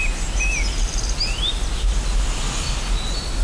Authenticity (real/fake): real